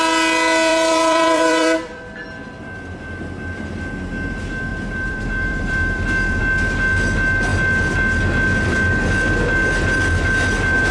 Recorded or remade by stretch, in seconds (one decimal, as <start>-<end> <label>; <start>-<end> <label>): 0.0-0.7 recorded; 0.7-3.8 remade; 3.8-4.7 recorded; 4.7-6.4 remade; 6.4-10.9 recorded